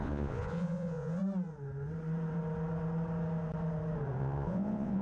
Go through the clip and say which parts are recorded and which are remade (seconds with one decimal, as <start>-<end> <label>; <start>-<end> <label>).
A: 0.0-1.2 remade; 1.2-4.2 recorded; 4.2-5.0 remade